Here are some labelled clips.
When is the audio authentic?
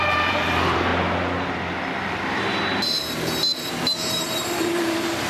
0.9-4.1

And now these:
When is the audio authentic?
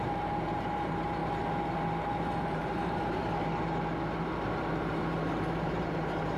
1.2-2.2; 3.2-4.2; 5.0-5.5